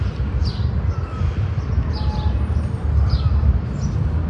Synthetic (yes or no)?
no